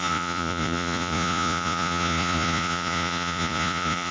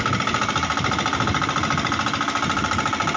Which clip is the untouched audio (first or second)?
second